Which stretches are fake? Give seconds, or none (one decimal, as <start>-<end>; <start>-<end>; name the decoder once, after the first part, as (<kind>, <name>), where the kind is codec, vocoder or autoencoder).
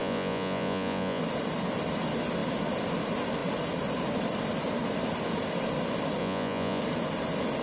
0.0-1.2 (vocoder, Vocos); 6.2-6.8